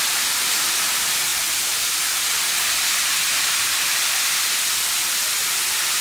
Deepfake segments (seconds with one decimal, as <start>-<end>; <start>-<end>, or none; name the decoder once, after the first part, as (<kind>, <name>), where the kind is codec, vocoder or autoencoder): none